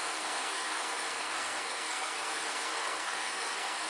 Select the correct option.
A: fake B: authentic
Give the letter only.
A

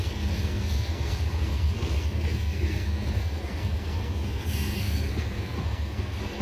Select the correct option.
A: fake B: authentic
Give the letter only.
A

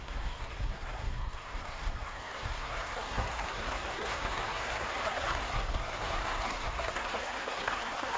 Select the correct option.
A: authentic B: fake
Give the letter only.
B